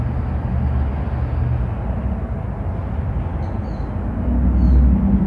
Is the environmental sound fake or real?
real